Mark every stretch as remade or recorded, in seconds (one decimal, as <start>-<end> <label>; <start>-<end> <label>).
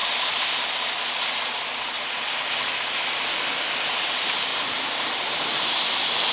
0.0-4.5 recorded; 4.5-5.7 remade; 5.7-6.3 recorded